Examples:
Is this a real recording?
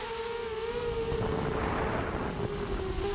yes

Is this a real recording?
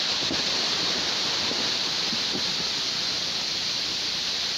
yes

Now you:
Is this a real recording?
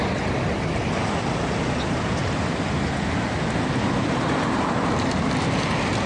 yes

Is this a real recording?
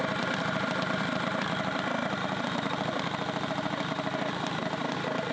yes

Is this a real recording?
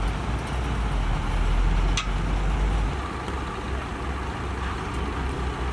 yes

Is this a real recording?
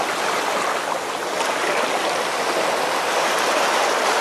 yes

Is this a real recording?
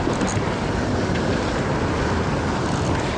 yes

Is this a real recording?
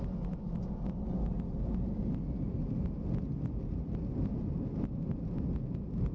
yes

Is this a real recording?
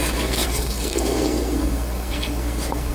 no